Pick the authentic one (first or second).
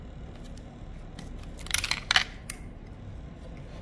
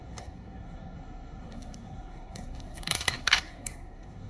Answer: first